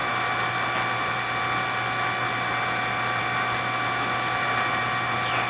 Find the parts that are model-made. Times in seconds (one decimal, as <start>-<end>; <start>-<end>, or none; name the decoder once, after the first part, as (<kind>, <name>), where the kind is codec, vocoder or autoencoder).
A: none